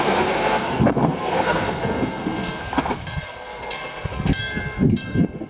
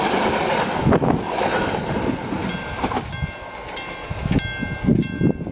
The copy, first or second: first